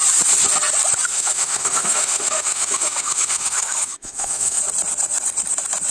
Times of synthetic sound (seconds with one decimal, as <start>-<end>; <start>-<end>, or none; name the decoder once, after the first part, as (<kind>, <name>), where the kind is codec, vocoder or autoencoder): 1.1-4.6 (autoencoder, DAC-VAE)